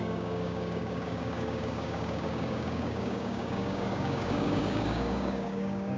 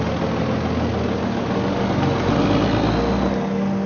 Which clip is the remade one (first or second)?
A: first